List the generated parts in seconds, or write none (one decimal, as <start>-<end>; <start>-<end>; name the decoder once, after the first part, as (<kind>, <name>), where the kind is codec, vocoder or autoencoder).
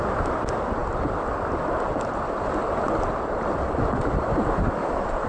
none